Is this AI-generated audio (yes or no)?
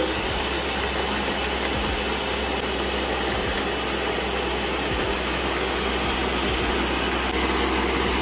no